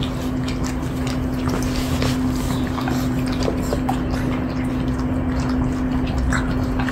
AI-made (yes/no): no